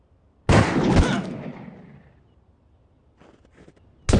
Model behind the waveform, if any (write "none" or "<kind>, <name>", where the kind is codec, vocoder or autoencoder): none